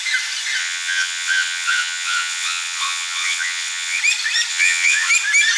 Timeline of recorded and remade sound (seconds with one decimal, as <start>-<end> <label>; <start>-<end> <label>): 0.0-0.6 recorded; 0.6-4.0 remade; 4.0-4.5 recorded; 4.5-5.1 remade; 5.1-5.6 recorded